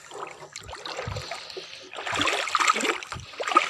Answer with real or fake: real